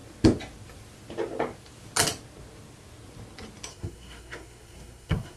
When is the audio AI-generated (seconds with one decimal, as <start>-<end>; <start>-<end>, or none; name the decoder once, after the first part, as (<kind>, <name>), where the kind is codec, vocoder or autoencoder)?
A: 3.7-5.4 (codec, SNAC)